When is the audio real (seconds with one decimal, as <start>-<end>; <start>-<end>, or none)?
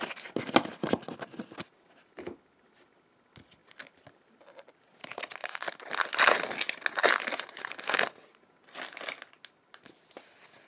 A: 0.0-3.6; 5.7-10.7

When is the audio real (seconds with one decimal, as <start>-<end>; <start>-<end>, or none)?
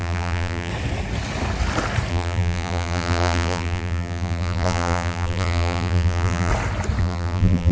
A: 0.7-2.1; 6.5-7.0